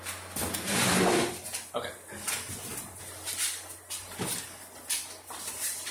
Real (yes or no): yes